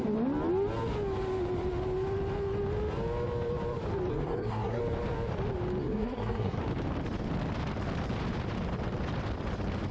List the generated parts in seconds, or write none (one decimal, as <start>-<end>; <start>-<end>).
4.1-4.8; 5.8-6.6

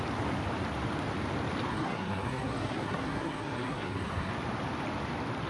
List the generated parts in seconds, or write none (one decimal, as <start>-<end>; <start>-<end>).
1.7-4.3

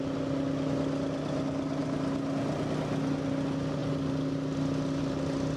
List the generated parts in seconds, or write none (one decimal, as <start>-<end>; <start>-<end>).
none

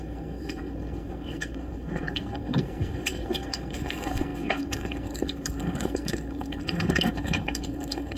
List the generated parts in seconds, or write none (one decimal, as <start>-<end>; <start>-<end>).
0.0-8.2

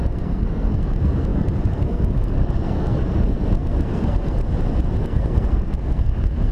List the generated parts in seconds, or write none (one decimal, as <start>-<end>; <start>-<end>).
0.0-4.4; 5.0-6.5

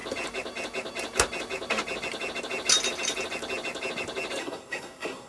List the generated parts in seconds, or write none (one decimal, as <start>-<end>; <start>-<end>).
4.4-5.3

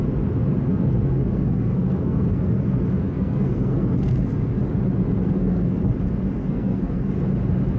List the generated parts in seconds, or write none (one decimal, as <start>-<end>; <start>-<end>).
0.7-4.6; 5.2-5.8; 6.4-7.2